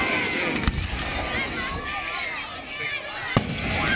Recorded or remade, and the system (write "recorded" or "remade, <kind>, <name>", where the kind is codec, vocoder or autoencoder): recorded